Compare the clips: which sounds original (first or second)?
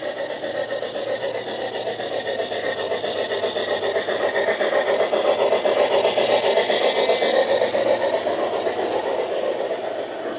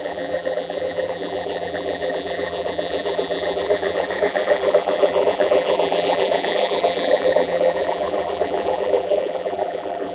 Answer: first